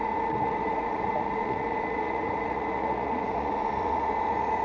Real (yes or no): no